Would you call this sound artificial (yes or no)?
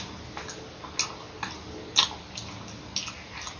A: no